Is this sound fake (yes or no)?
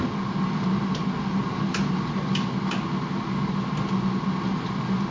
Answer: no